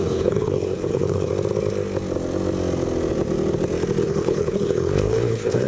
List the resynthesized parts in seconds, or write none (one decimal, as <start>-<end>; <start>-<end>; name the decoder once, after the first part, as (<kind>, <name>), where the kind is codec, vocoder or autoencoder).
0.0-1.3 (codec, HILCodec); 4.0-5.7